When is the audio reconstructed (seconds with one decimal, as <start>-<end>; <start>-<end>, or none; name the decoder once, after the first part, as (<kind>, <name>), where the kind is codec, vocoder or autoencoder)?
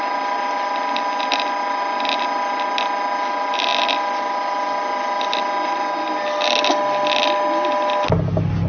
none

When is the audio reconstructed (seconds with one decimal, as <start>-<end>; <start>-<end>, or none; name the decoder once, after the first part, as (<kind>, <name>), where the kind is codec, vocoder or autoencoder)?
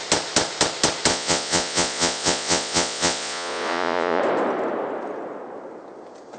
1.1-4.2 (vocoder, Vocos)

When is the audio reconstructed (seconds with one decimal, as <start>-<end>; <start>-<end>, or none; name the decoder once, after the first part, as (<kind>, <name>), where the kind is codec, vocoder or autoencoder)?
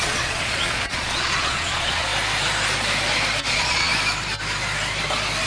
0.0-2.1 (vocoder, Vocos); 3.5-3.9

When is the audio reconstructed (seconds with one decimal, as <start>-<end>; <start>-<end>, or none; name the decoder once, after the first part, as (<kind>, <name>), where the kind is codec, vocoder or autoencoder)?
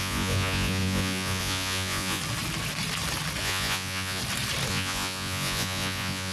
0.0-2.2 (vocoder, Vocos); 3.4-4.2; 4.7-6.3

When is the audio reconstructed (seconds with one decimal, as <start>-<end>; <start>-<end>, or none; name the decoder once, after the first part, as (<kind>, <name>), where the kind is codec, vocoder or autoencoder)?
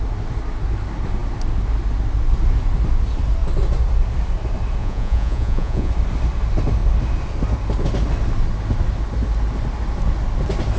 4.8-5.9 (vocoder, Vocos)